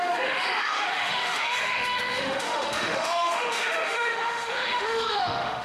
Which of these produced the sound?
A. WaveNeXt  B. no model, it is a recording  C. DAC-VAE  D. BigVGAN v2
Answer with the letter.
C